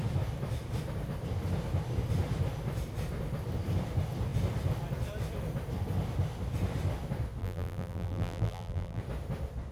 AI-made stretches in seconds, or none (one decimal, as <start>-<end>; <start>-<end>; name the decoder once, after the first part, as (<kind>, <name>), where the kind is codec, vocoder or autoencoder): 7.4-9.0 (vocoder, BigVGAN v2)